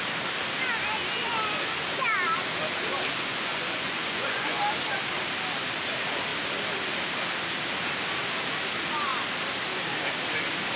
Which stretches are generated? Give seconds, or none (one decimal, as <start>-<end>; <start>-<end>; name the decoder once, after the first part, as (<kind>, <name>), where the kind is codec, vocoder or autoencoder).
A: 3.3-4.6 (vocoder, Vocos)